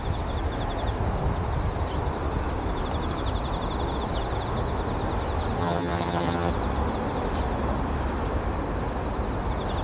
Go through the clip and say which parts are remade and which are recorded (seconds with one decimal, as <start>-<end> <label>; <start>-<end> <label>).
0.0-5.6 recorded; 5.6-6.5 remade; 6.5-9.8 recorded